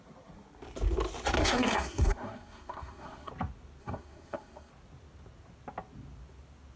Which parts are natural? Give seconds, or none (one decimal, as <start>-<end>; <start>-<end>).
0.0-1.4; 3.3-3.8; 4.7-6.8

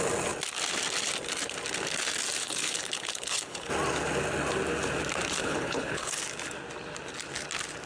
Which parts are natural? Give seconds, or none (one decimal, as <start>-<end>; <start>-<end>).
0.0-2.4; 3.7-5.4; 6.2-7.9